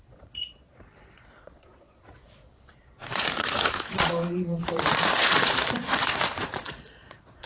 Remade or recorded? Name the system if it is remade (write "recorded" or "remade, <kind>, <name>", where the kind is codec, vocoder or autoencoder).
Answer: remade, vocoder, Vocos